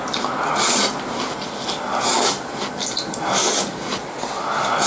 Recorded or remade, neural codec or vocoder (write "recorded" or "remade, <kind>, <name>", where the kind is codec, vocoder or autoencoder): recorded